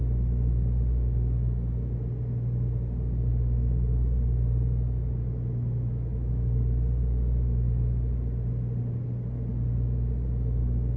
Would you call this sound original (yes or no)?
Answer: yes